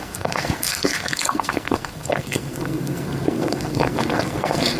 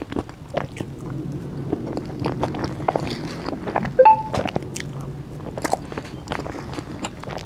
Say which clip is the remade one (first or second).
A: first